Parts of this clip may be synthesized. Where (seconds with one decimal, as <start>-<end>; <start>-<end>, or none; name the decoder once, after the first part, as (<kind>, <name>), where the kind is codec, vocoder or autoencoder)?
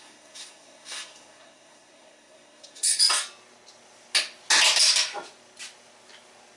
0.0-3.0 (codec, SNAC)